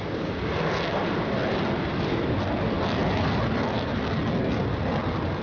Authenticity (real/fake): real